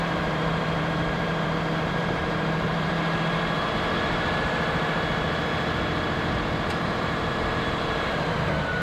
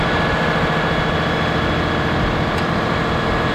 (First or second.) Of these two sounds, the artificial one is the first